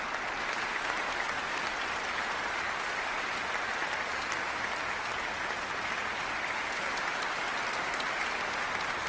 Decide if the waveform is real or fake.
real